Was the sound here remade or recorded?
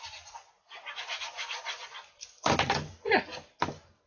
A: recorded